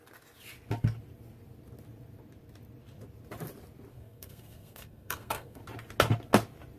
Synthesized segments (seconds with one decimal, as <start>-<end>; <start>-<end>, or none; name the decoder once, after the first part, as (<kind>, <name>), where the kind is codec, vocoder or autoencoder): 3.9-5.6 (codec, SNAC)